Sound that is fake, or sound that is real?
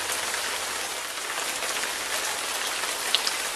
real